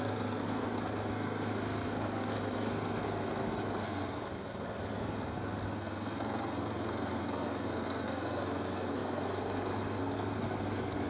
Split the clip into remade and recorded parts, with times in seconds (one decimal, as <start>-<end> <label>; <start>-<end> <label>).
0.0-11.1 remade